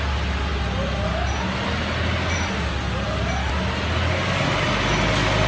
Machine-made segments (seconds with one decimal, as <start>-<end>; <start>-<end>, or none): none